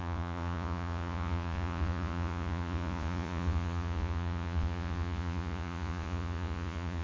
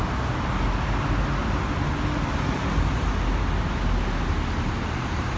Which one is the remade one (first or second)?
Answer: first